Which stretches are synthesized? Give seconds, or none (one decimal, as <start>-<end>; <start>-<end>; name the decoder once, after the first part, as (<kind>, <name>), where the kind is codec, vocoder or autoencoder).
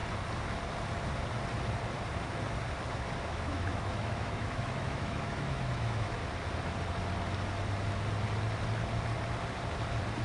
3.2-6.2 (autoencoder, DAC-VAE)